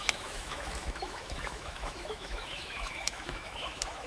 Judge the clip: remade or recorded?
remade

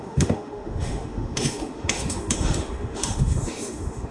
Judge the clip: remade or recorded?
remade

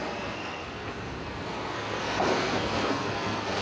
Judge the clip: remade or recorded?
remade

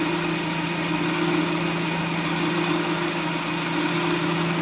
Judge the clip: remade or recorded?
recorded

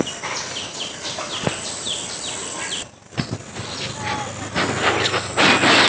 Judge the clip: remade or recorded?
recorded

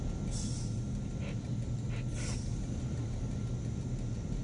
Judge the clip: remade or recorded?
recorded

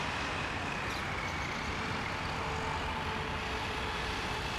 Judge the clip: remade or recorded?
recorded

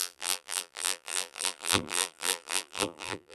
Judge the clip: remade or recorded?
remade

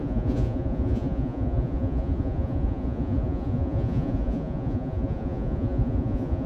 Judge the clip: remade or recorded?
remade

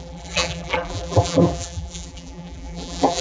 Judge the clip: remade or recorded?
remade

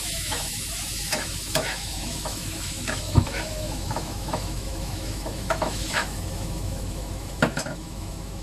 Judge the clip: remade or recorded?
remade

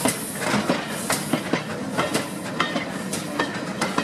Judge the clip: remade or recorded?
recorded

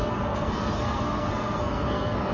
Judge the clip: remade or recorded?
remade